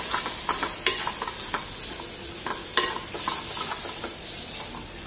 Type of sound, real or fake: real